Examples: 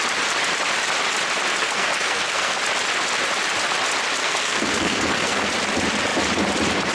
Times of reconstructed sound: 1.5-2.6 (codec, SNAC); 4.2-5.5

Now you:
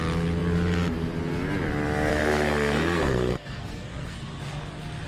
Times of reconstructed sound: 2.1-4.4 (codec, SNAC)

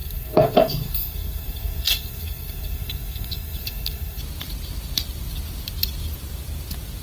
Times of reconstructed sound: 0.0-4.2 (codec, SNAC)

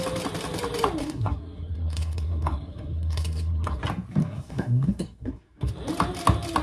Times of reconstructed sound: 1.0-3.8 (codec, SNAC); 4.2-5.7

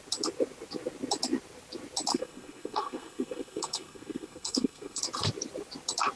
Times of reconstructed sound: 2.1-5.0 (codec, SNAC)

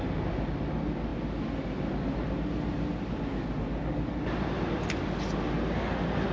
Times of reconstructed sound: none

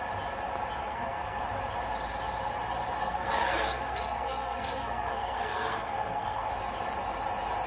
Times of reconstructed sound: 0.8-1.4 (codec, SNAC); 3.0-6.5

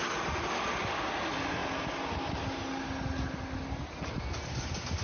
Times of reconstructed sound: none